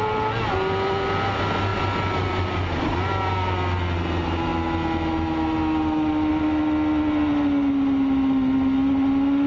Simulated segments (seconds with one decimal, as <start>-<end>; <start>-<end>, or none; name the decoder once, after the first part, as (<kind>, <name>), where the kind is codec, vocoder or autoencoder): none